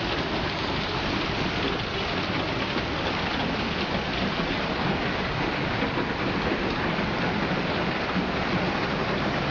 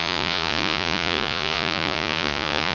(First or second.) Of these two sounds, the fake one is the second